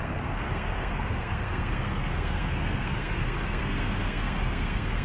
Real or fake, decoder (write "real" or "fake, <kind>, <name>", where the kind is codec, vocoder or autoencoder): fake, codec, SNAC